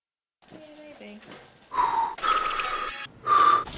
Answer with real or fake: real